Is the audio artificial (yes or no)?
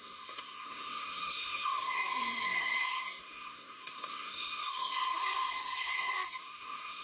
yes